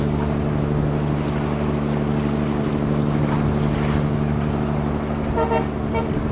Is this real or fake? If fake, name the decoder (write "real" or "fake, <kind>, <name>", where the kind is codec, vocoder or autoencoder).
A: real